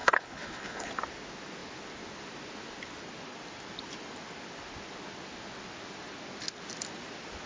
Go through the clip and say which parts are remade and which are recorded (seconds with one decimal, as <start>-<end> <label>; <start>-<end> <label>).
0.0-0.9 remade; 0.9-7.5 recorded